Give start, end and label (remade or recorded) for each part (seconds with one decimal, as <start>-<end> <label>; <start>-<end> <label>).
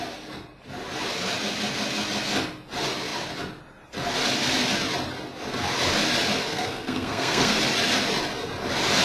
0.0-6.5 recorded; 6.5-7.6 remade; 7.6-9.0 recorded